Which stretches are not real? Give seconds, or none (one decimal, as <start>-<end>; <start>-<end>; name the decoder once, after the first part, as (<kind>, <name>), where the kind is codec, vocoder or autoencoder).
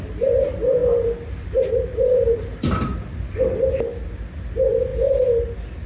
none